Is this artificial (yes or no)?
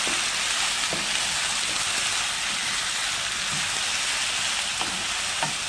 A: no